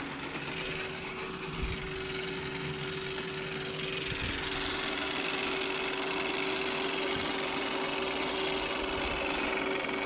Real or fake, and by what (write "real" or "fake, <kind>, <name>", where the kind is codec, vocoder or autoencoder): real